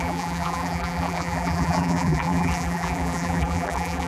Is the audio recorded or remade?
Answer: remade